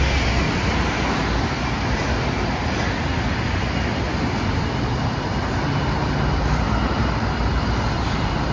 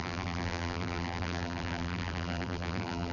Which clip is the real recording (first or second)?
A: first